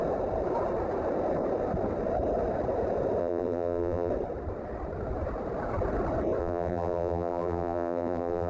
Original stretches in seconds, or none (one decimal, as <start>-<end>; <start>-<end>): 0.0-3.2; 4.1-6.4